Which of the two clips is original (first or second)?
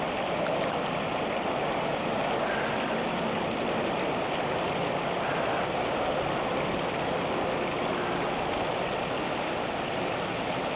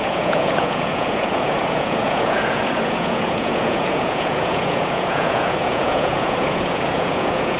first